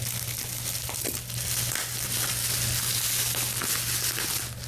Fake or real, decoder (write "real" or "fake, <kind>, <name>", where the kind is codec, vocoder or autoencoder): real